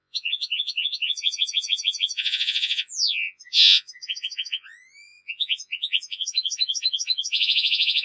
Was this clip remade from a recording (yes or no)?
yes